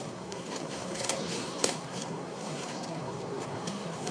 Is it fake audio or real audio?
fake